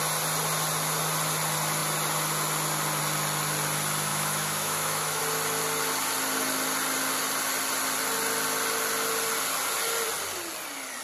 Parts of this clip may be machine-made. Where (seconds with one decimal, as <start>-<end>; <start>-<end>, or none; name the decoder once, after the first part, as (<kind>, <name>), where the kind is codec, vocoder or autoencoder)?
4.1-5.2 (autoencoder, DAC-VAE)